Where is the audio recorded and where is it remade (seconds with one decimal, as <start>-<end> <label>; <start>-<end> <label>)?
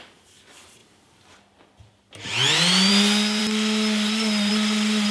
0.0-5.1 recorded